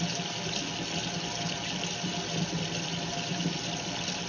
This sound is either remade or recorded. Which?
recorded